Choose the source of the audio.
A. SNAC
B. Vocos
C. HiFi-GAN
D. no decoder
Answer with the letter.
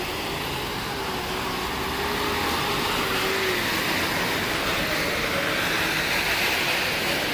D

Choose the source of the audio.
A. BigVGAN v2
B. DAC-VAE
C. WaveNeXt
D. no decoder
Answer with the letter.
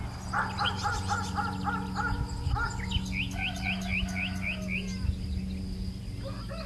D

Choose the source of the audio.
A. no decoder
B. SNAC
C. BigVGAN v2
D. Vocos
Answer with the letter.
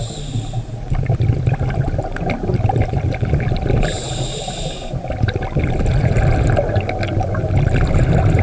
A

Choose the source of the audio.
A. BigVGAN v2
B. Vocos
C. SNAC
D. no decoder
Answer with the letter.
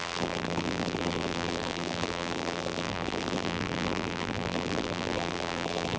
A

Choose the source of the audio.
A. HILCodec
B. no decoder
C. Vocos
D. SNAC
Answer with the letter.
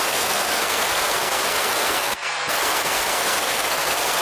D